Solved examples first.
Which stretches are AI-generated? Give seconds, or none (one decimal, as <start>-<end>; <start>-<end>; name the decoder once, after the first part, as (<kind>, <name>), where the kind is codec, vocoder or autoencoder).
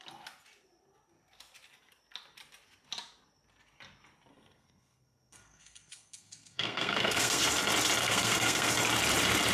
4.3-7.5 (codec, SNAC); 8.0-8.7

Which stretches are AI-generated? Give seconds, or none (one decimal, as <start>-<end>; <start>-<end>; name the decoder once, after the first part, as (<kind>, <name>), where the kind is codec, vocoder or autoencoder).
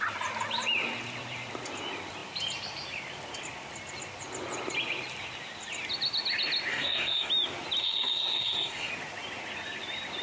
6.7-7.3 (codec, SNAC); 7.8-8.9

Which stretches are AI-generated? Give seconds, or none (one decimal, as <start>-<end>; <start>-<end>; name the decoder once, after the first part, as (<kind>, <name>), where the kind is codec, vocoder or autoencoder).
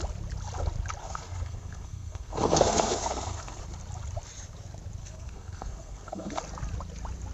1.0-3.6 (codec, SNAC); 5.0-6.4